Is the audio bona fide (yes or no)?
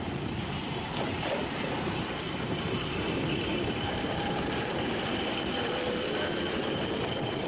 no